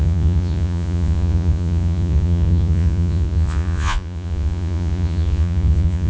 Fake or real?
fake